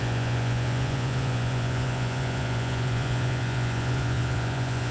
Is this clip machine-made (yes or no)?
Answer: yes